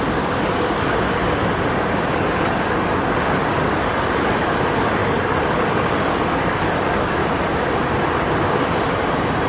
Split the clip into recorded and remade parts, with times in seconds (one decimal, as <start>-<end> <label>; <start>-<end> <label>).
0.0-1.2 remade; 1.2-2.1 recorded; 2.1-7.2 remade; 7.2-9.5 recorded